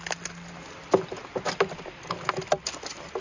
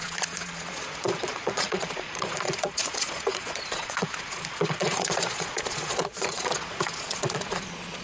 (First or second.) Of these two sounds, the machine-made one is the second